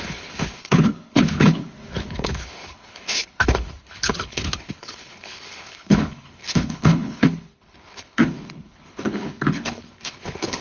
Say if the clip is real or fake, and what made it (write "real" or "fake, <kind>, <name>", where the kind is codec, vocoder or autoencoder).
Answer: fake, codec, HILCodec